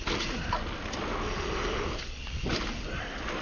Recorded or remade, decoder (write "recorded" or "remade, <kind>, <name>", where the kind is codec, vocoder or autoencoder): recorded